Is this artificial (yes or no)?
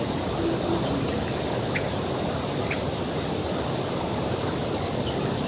no